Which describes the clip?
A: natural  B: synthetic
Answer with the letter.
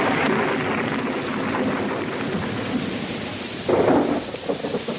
A